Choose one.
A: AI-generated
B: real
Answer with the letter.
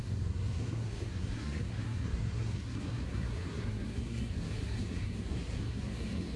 A